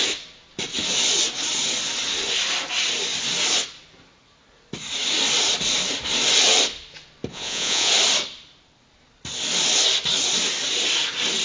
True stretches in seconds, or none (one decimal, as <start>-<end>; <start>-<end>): 0.0-7.3; 7.9-11.4